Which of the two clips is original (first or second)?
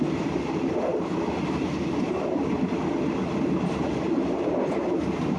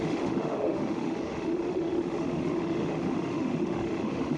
first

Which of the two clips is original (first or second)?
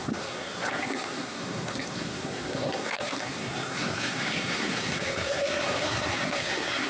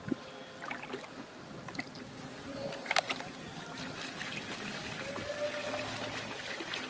second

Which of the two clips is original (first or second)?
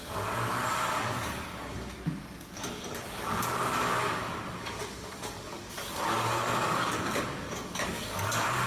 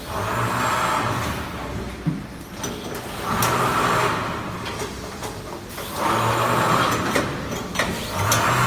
second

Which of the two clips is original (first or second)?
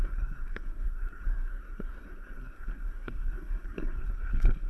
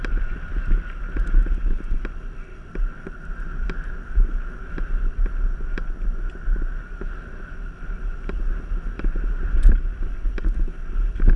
second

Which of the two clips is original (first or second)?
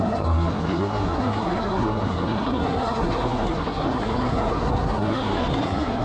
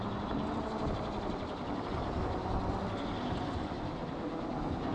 second